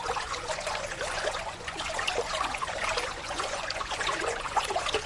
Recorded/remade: remade